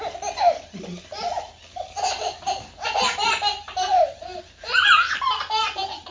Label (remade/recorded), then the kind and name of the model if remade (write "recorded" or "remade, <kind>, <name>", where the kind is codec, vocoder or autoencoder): recorded